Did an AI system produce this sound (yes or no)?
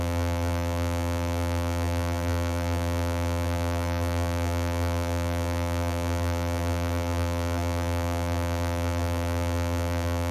yes